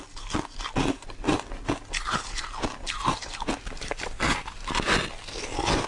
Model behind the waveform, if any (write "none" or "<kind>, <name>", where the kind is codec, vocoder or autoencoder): none